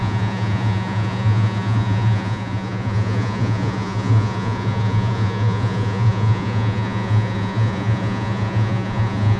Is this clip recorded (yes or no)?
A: no